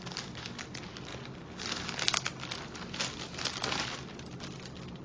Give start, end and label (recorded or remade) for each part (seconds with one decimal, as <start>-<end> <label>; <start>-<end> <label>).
0.0-5.0 recorded